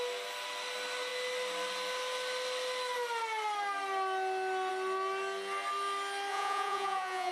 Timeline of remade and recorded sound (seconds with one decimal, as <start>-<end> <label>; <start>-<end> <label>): 0.0-6.3 recorded; 6.3-7.3 remade